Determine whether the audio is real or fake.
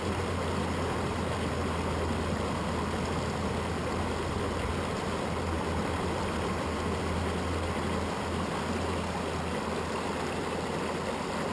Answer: real